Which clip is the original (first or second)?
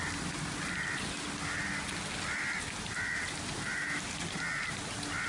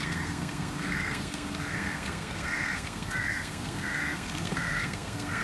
first